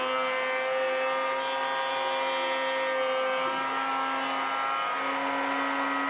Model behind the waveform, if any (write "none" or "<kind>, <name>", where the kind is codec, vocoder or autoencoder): none